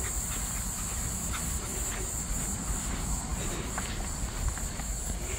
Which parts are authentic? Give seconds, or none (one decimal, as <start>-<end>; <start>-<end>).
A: 0.0-5.4